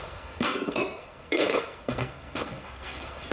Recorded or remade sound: remade